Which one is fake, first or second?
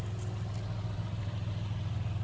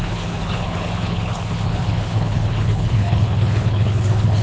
second